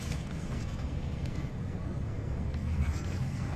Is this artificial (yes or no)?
yes